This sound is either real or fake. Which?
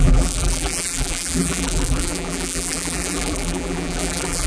fake